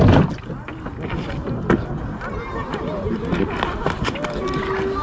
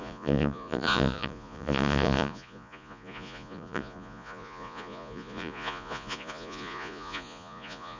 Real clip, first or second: first